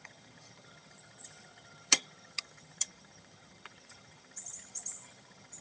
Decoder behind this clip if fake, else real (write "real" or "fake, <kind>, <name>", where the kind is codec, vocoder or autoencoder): fake, vocoder, HiFi-GAN